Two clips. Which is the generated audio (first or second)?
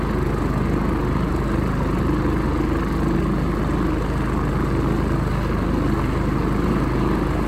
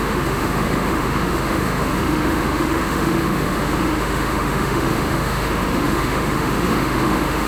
second